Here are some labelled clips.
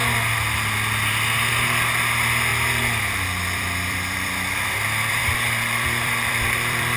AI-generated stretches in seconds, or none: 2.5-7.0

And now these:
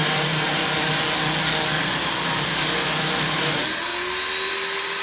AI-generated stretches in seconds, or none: 0.0-1.0; 1.8-2.7

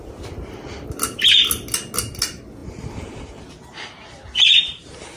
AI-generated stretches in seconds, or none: 2.6-5.2

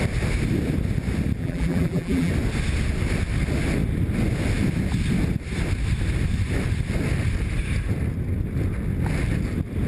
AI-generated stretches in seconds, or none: 1.4-2.3

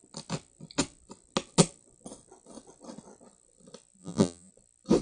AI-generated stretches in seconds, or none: 4.0-4.5

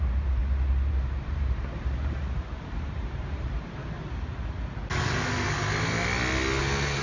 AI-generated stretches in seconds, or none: 0.0-0.4; 0.9-3.8; 6.6-7.0

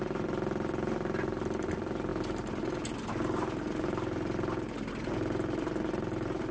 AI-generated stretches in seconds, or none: none